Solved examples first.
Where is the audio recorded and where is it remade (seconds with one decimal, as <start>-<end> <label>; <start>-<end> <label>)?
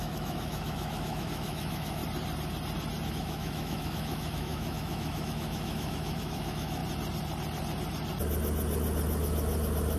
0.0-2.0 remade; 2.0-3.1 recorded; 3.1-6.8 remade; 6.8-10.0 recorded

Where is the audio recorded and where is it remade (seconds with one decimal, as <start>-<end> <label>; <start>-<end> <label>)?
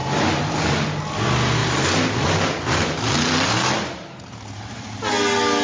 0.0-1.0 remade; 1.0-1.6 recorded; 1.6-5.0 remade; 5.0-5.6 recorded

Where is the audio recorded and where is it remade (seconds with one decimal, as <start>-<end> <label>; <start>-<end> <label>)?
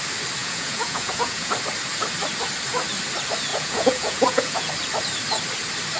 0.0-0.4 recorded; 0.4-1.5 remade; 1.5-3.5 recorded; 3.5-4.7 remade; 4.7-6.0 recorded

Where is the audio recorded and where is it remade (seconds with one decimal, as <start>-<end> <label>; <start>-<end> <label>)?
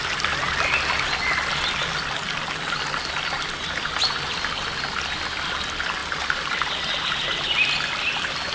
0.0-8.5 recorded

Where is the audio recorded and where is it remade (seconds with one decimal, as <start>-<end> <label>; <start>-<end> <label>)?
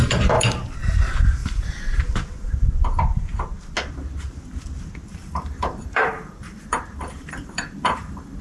0.0-0.6 remade; 0.6-1.4 recorded; 1.4-2.0 remade; 2.0-5.1 recorded; 5.1-8.4 remade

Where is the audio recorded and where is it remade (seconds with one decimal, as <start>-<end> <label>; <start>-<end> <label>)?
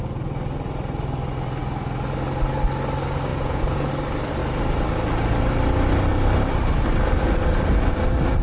0.0-3.3 recorded; 3.3-3.9 remade; 3.9-8.4 recorded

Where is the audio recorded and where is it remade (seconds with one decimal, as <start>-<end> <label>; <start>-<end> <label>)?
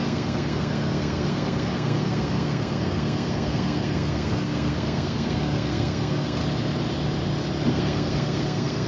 0.0-6.4 remade; 6.4-7.7 recorded; 7.7-8.9 remade